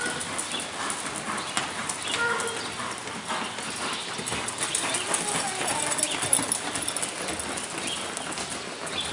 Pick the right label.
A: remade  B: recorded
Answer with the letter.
B